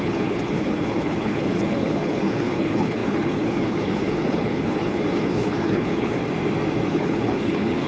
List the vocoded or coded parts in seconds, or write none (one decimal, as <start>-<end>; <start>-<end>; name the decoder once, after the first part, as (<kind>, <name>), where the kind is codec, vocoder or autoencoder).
0.0-6.2 (codec, HILCodec); 6.9-7.9